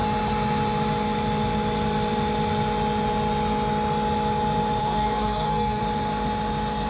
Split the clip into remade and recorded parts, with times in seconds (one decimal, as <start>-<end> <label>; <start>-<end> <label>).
0.0-4.8 recorded; 4.8-5.8 remade; 5.8-6.9 recorded